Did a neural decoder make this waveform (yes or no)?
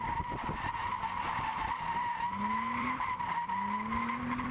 yes